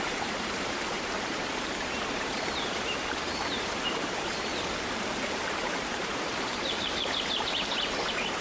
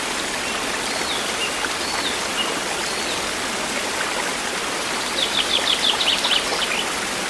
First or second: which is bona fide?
second